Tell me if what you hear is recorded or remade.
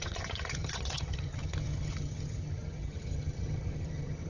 remade